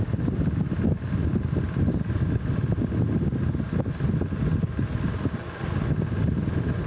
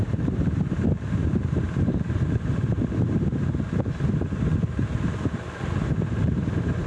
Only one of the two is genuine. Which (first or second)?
first